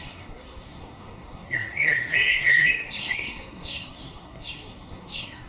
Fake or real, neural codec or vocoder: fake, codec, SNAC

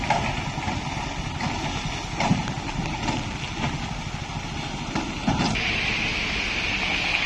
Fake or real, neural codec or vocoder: real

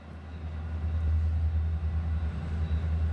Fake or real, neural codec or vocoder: real